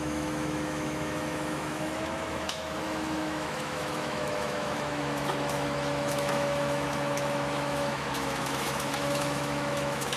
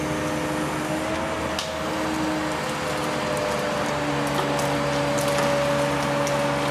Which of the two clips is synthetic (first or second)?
first